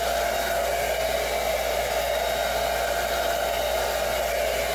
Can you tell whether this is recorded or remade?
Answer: recorded